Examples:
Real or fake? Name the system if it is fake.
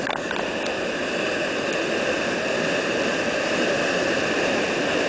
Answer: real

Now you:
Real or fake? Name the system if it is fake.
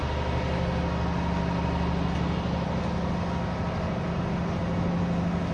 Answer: real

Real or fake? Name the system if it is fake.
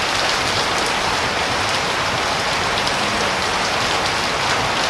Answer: fake, vocoder, BigVGAN v2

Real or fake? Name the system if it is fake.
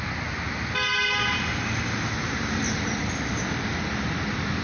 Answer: real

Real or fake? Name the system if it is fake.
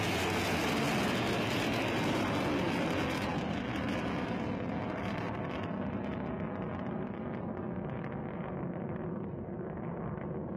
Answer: real